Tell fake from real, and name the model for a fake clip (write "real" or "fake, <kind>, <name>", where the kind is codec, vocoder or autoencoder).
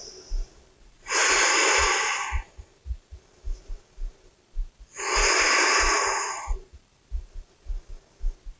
real